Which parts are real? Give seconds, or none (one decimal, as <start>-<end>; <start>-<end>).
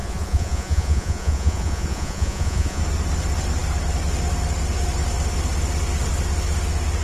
2.8-7.0